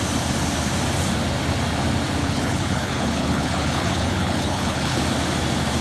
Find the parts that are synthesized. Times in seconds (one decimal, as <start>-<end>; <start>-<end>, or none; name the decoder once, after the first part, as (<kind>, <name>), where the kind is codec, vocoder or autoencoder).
2.2-5.0 (codec, HILCodec)